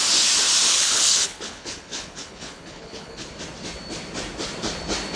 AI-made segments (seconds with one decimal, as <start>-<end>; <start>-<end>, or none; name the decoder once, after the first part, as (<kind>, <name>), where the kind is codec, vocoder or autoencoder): 0.7-3.3 (codec, HILCodec)